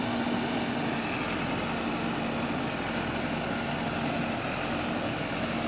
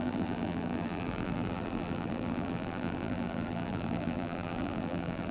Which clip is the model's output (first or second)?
second